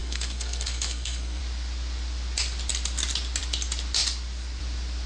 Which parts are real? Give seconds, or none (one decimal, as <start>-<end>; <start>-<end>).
1.4-5.1